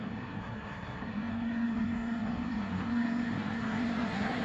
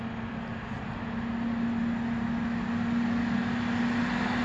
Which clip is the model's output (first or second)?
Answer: first